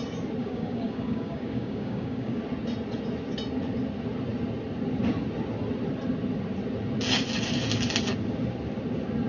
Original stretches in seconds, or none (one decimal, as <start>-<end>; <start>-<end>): 0.0-0.4; 2.4-9.3